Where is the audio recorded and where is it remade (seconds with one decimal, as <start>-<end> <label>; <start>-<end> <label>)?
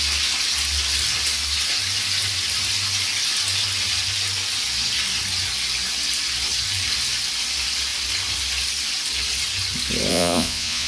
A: 0.0-10.1 recorded; 10.1-10.9 remade